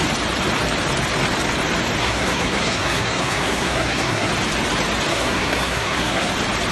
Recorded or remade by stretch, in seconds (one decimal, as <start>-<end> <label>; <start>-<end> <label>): 0.0-2.0 recorded; 2.0-4.3 remade; 4.3-5.1 recorded; 5.1-6.3 remade; 6.3-6.7 recorded